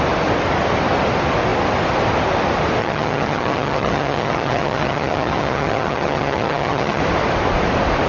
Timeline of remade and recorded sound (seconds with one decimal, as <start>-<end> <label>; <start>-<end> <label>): 0.0-2.8 recorded; 2.8-7.0 remade; 7.0-8.1 recorded